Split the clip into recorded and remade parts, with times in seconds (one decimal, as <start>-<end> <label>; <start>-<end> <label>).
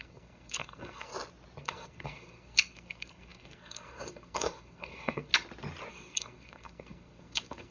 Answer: 0.0-1.1 remade; 1.1-1.6 recorded; 1.6-5.3 remade; 5.3-5.9 recorded; 5.9-7.7 remade